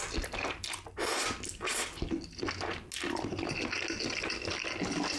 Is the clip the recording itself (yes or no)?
yes